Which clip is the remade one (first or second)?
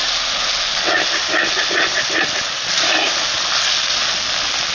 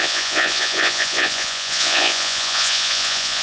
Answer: second